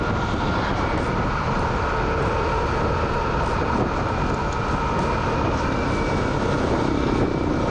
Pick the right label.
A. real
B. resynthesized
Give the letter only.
A